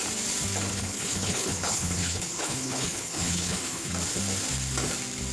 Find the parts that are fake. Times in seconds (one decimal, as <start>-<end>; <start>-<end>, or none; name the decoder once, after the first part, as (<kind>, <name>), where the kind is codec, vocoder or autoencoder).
0.7-3.9 (codec, HILCodec)